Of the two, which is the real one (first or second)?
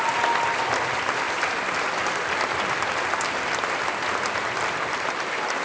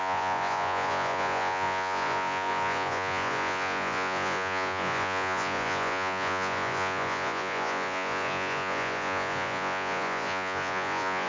first